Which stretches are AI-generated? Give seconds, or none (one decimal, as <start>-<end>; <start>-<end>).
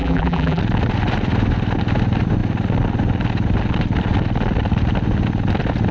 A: 0.0-0.6